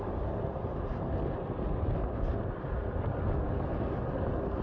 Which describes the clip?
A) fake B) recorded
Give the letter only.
B